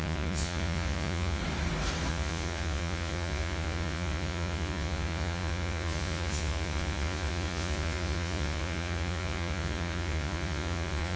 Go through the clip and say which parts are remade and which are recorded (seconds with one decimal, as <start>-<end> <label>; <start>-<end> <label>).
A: 0.0-1.4 remade; 1.4-2.1 recorded; 2.1-11.2 remade